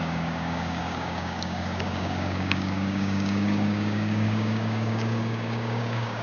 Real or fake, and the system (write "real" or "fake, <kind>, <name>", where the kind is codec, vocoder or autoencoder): fake, codec, DAC